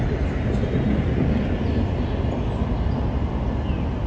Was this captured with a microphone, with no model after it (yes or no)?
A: yes